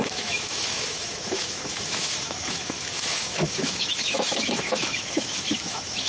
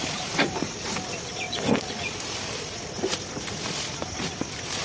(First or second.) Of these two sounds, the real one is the second